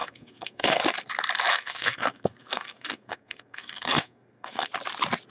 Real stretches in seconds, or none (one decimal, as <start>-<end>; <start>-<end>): 0.8-1.5; 4.7-5.3